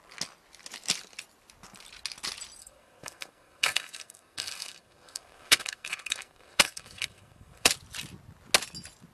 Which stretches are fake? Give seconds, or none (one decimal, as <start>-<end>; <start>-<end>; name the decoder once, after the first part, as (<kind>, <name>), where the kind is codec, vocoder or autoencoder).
2.6-7.7 (codec, SNAC)